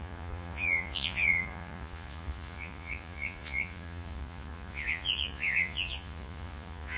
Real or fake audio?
fake